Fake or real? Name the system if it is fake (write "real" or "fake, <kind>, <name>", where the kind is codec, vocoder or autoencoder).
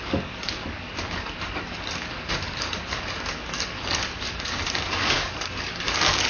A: fake, codec, DAC